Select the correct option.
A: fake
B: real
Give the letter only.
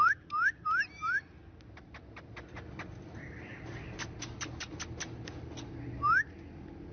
B